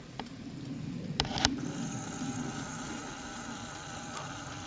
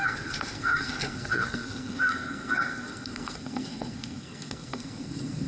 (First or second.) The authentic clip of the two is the first